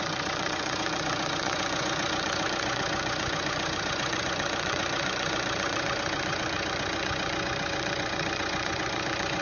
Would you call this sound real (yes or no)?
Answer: no